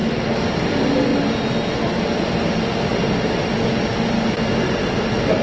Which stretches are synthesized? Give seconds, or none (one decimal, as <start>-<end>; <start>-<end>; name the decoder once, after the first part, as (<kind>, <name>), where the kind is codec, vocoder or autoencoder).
0.0-1.1 (vocoder, BigVGAN v2); 2.1-2.9; 4.5-5.4